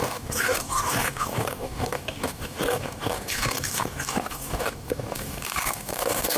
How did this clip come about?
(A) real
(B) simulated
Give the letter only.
B